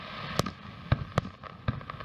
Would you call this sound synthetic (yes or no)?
no